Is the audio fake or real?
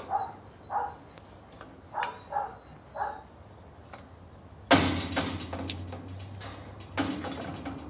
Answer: real